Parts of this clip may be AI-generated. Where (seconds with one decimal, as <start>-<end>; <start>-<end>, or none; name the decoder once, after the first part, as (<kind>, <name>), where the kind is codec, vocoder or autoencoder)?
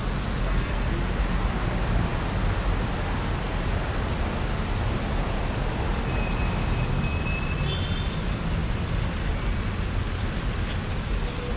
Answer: 0.4-0.9 (codec, SNAC)